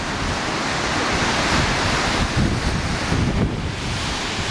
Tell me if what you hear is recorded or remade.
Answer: recorded